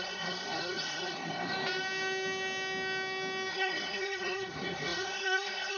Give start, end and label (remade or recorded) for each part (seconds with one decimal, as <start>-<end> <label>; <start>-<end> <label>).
0.0-1.5 remade; 1.5-3.5 recorded; 3.5-5.8 remade